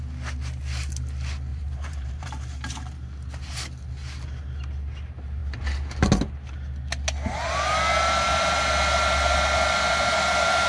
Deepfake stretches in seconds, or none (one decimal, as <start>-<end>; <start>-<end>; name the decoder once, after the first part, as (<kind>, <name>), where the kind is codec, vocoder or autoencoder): 1.5-2.5 (vocoder, BigVGAN v2)